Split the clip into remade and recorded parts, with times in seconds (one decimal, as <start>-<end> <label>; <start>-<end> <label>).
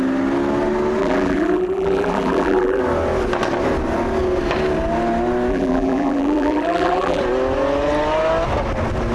0.0-1.0 recorded; 1.0-2.8 remade; 2.8-5.5 recorded; 5.5-7.2 remade; 7.2-9.1 recorded